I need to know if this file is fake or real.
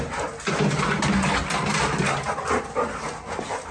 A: real